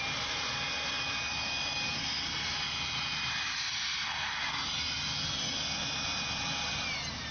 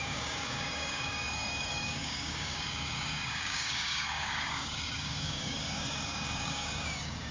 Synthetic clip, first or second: second